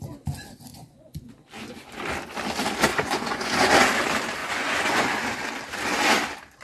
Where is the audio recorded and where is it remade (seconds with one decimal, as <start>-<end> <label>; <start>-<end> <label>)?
0.0-0.7 recorded; 0.7-1.3 remade; 1.3-2.9 recorded; 2.9-3.7 remade; 3.7-4.4 recorded; 4.4-5.1 remade; 5.1-6.6 recorded